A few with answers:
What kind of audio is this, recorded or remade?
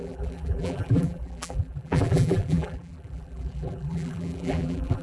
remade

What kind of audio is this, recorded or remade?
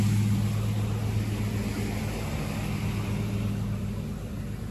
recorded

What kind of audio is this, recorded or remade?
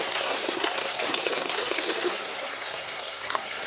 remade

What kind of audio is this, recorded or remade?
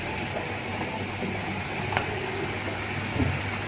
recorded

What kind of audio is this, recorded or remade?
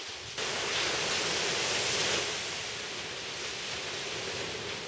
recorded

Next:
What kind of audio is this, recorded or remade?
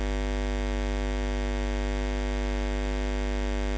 recorded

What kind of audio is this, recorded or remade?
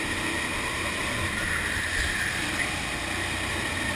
recorded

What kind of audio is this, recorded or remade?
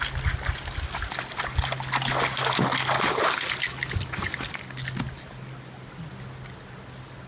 recorded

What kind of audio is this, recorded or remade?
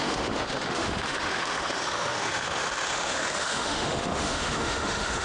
remade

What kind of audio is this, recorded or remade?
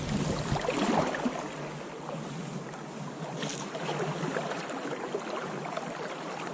recorded